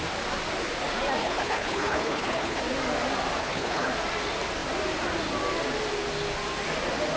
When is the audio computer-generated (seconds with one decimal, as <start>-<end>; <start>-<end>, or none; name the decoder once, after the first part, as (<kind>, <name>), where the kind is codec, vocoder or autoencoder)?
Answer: 1.2-2.6 (codec, HILCodec); 3.4-3.9